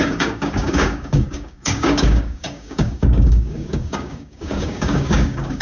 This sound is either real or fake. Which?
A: fake